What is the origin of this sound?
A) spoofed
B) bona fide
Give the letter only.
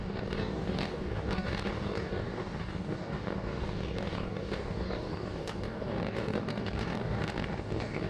A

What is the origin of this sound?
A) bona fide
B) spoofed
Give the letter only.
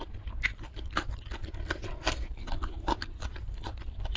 A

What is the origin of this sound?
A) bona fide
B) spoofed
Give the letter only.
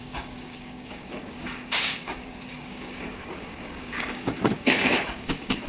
B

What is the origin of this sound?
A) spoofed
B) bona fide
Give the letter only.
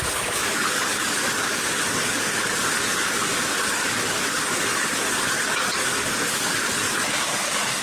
A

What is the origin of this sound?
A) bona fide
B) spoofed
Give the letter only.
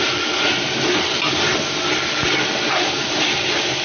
A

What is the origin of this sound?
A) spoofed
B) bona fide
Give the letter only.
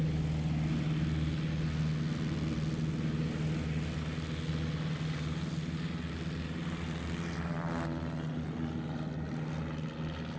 B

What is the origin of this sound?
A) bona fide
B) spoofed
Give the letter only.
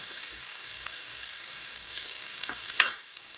B